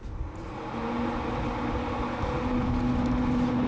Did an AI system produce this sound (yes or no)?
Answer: no